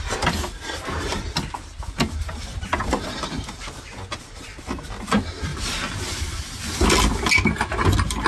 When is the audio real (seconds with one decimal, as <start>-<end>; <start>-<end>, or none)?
0.0-8.3